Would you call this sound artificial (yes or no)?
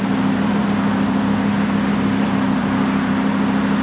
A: no